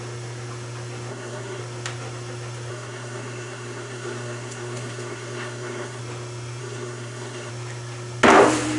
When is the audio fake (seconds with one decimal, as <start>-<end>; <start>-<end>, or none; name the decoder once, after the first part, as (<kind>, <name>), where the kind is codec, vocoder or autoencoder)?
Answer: 1.1-1.6 (codec, SNAC); 2.7-6.0; 6.6-7.5